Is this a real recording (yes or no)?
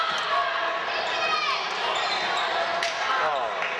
yes